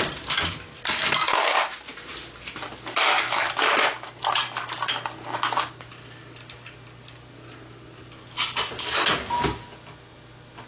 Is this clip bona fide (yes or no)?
yes